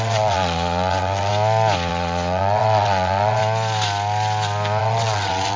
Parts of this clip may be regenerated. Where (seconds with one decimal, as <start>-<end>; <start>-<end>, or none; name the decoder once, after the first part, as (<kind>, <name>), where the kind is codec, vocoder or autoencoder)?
0.0-1.3 (vocoder, WaveNeXt); 1.9-3.4; 4.8-5.6